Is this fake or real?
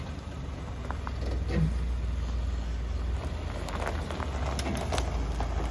real